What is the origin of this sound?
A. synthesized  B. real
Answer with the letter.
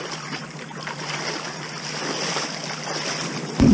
A